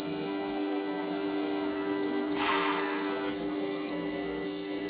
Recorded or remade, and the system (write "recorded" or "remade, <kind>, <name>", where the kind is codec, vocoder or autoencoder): remade, codec, SNAC